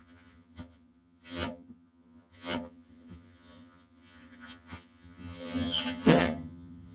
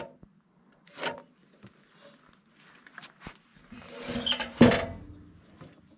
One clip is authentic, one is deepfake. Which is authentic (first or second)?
second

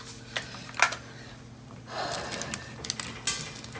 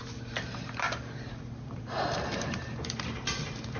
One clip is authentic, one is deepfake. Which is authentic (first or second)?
first